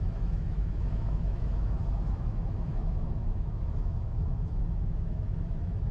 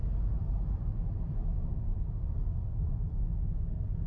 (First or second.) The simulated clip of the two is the first